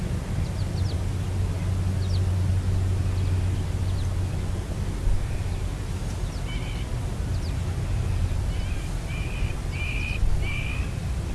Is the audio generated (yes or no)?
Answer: no